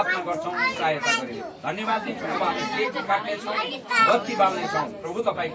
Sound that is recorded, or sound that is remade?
recorded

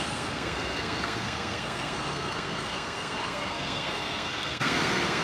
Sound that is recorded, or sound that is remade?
remade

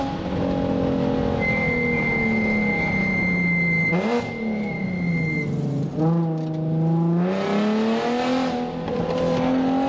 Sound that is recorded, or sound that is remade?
recorded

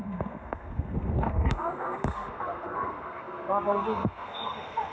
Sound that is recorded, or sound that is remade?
remade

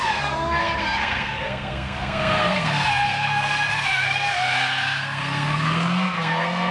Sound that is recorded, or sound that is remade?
remade